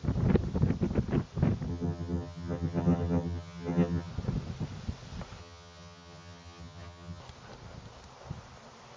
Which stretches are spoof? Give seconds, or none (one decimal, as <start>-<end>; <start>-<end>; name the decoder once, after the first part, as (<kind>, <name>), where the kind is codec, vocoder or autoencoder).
1.7-4.1 (vocoder, HiFi-GAN); 5.4-7.2